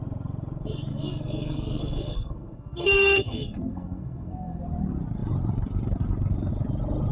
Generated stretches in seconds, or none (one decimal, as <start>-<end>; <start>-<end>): 0.9-4.6

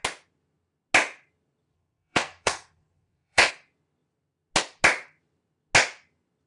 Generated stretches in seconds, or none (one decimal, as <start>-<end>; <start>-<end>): 1.7-3.5

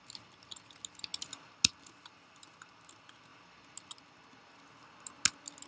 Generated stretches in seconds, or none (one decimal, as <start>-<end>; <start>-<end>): none

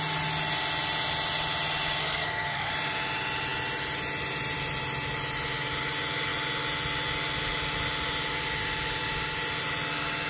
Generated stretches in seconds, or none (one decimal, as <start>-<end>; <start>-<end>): 2.0-2.7